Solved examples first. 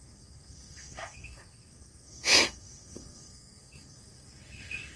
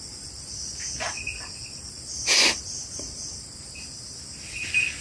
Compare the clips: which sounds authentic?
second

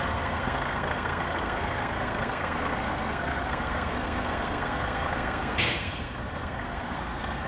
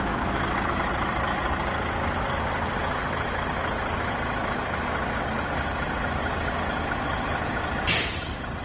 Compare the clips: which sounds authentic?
second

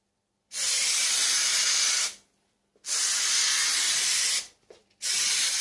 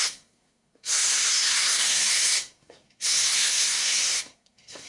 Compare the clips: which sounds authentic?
first